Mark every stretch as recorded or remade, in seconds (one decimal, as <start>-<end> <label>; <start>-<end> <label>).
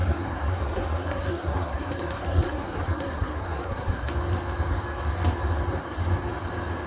0.0-4.1 remade; 4.1-6.9 recorded